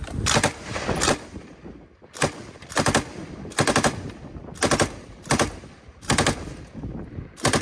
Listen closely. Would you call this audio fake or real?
real